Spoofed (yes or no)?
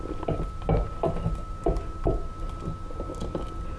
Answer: no